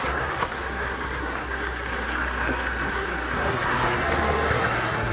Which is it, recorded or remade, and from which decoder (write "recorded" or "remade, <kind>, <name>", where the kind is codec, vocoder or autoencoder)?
remade, codec, SNAC